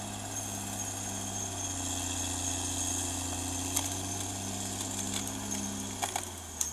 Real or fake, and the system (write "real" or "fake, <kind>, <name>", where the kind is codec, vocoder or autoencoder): real